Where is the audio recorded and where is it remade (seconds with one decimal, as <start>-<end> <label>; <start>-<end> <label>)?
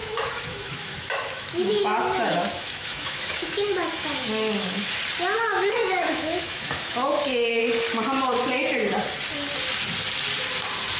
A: 0.0-5.0 remade; 5.0-5.5 recorded; 5.5-7.6 remade; 7.6-11.0 recorded